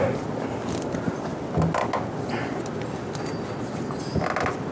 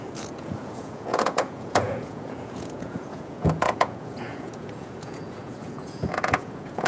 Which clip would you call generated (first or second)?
second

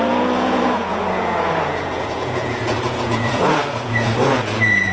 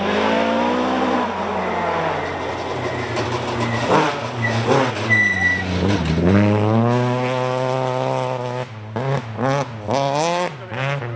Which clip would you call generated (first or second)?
first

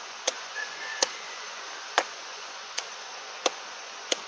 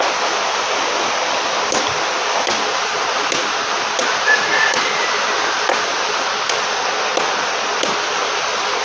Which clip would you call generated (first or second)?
first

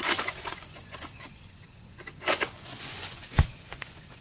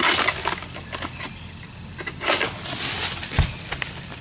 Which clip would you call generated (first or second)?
first